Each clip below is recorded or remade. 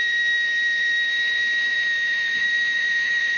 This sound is remade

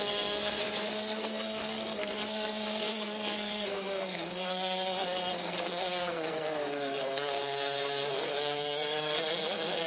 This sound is remade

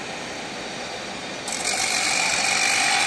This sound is remade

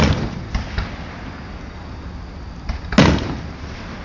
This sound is recorded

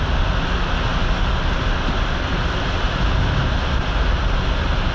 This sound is recorded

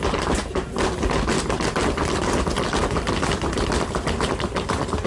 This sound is recorded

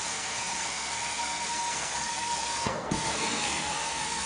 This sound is remade